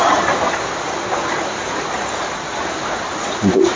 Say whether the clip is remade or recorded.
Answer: recorded